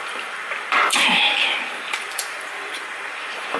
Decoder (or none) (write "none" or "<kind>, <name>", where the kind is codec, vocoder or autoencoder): vocoder, BigVGAN v2